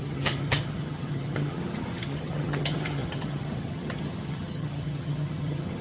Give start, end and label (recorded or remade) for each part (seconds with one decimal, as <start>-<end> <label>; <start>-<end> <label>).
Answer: 0.0-5.8 remade